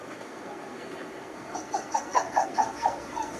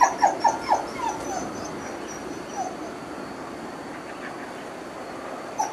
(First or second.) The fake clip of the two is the first